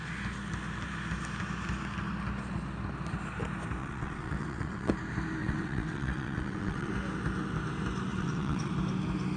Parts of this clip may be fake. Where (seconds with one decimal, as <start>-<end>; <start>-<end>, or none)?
3.8-4.9; 5.4-6.9; 8.1-8.7